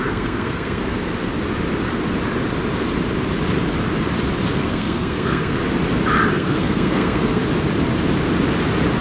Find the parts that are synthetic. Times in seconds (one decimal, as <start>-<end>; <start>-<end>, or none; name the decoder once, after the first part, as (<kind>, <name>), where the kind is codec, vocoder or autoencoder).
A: 0.0-1.1 (codec, SNAC); 4.6-5.6; 6.3-7.4